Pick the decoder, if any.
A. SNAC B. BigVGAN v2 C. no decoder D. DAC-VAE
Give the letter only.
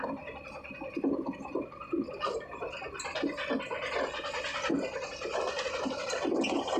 C